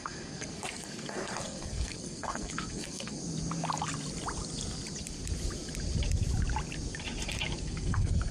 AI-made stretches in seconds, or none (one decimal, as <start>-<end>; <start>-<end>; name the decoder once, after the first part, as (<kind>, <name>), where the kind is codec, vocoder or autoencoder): 0.0-3.2 (codec, SNAC); 7.6-8.3